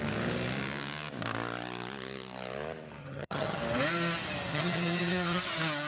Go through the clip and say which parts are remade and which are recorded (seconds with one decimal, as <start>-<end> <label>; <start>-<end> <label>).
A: 0.0-3.0 recorded; 3.0-3.6 remade; 3.6-4.5 recorded; 4.5-5.5 remade; 5.5-5.9 recorded